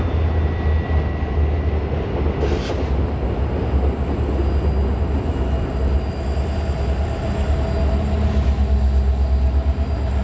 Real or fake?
real